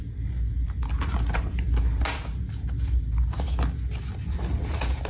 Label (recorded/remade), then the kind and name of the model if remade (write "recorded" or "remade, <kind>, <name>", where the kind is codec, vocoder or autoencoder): recorded